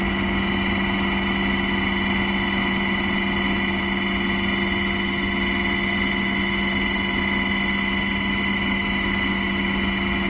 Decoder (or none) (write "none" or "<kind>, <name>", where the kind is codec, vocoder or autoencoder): none